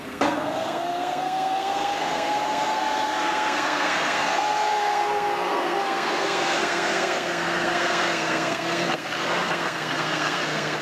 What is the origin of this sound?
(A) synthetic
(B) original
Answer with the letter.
A